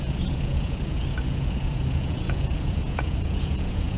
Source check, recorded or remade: remade